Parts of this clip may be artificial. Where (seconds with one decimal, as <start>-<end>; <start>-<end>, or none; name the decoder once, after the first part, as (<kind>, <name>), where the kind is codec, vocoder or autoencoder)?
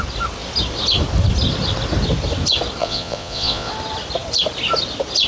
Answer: 2.8-3.7 (vocoder, Vocos)